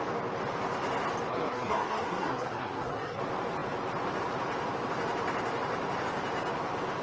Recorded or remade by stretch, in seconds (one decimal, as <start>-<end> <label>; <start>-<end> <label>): 0.0-1.3 recorded; 1.3-3.2 remade; 3.2-7.0 recorded